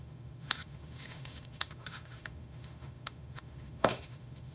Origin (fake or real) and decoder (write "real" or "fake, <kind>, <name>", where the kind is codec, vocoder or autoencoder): fake, autoencoder, DAC-VAE